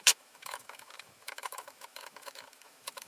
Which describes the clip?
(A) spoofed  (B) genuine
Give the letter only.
A